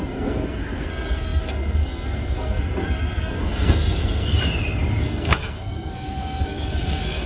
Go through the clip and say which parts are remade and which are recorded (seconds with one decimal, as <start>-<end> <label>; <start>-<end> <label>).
0.0-4.3 remade; 4.3-5.0 recorded; 5.0-7.3 remade